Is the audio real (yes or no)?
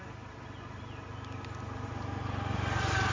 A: yes